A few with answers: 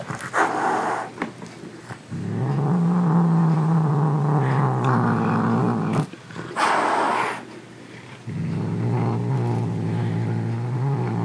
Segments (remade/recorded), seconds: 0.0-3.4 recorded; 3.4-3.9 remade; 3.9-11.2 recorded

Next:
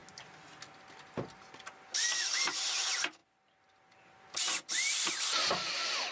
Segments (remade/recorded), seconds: 0.0-6.1 recorded

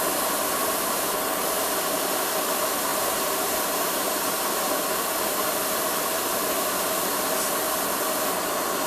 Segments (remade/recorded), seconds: 0.0-0.6 recorded; 0.6-1.4 remade; 1.4-2.9 recorded; 2.9-4.3 remade; 4.3-8.9 recorded

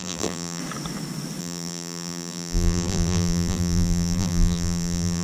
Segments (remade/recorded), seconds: 0.0-0.6 remade; 0.6-1.4 recorded; 1.4-5.2 remade